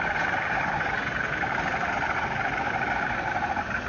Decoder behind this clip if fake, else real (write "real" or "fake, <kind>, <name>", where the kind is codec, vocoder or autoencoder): real